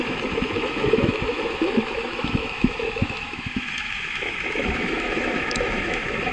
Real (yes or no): no